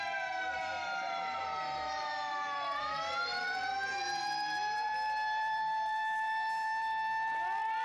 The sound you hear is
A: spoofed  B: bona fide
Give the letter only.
A